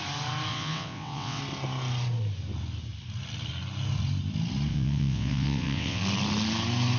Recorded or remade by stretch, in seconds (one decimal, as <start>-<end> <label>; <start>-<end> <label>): 0.0-0.5 recorded; 0.5-1.4 remade; 1.4-4.7 recorded; 4.7-6.0 remade; 6.0-7.0 recorded